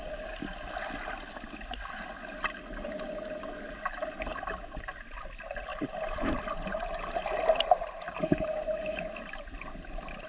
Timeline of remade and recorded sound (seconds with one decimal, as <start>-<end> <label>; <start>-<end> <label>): 0.0-10.3 recorded